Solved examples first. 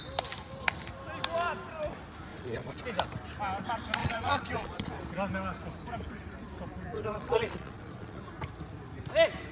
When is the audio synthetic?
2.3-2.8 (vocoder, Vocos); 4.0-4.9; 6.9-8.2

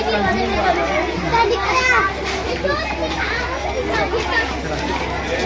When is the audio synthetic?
none

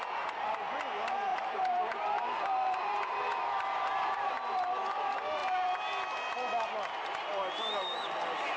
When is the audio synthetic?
1.3-4.3 (vocoder, BigVGAN v2)

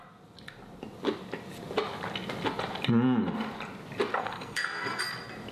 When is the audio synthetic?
4.2-5.0 (codec, SNAC)